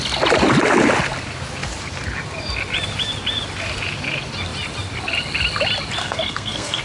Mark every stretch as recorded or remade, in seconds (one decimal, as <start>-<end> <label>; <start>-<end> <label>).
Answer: 0.0-6.0 recorded; 6.0-6.8 remade